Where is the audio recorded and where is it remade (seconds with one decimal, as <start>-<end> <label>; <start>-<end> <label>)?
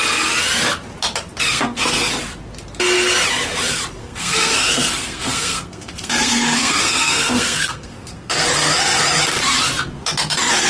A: 0.0-1.5 recorded; 1.5-2.1 remade; 2.1-4.0 recorded; 4.0-8.4 remade; 8.4-10.7 recorded